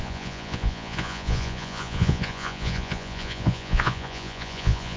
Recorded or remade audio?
remade